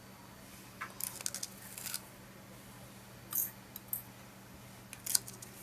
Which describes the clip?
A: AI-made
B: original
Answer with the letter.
B